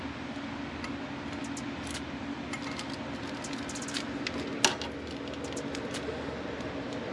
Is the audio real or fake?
real